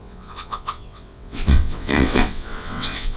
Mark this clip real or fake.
fake